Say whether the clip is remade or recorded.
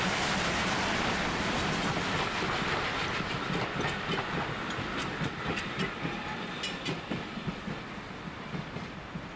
recorded